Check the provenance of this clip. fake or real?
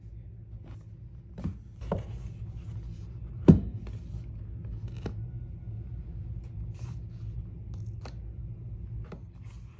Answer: real